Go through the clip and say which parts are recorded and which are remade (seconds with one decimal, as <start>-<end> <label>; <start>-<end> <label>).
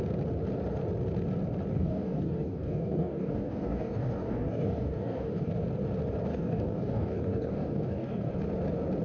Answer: 0.0-1.7 recorded; 1.7-5.5 remade; 5.5-6.3 recorded; 6.3-8.3 remade; 8.3-9.0 recorded